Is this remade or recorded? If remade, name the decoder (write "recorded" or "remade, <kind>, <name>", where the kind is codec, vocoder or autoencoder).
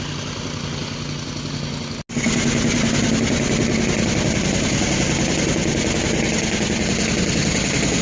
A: recorded